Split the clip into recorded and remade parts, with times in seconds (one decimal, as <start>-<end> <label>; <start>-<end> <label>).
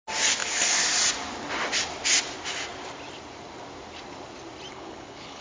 0.0-4.7 recorded; 4.7-5.4 remade